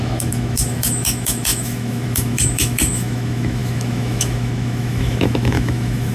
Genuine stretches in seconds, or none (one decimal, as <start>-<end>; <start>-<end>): none